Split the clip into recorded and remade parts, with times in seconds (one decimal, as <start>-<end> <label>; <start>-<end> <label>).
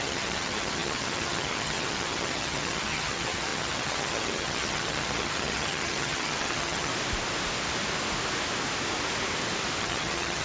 0.0-6.9 remade; 6.9-9.8 recorded; 9.8-10.4 remade